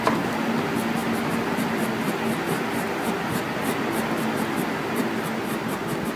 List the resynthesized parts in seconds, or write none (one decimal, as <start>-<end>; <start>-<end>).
none